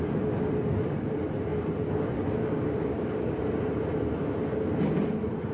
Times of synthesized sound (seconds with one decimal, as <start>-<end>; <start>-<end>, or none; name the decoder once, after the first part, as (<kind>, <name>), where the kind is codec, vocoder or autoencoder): none